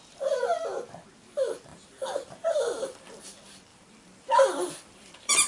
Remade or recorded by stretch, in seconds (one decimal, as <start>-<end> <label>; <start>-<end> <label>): 0.0-1.7 recorded; 1.7-3.2 remade; 3.2-3.7 recorded; 3.7-5.5 remade